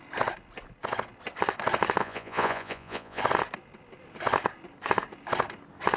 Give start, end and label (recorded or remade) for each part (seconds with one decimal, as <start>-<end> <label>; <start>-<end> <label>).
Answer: 0.0-2.0 recorded; 2.0-3.2 remade; 3.2-6.0 recorded